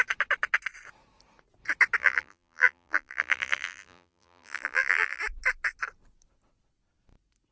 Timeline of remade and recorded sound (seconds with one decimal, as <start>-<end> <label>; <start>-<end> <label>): 0.0-2.0 recorded; 2.0-5.2 remade; 5.2-7.5 recorded